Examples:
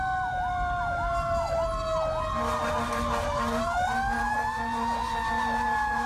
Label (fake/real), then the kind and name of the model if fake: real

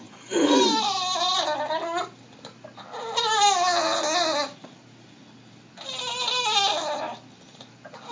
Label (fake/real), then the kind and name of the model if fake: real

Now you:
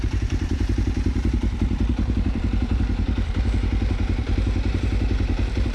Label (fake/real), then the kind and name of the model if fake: fake, vocoder, BigVGAN v2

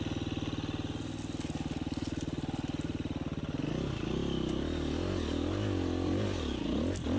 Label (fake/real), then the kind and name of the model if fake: real